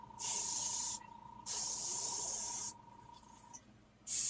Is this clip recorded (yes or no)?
no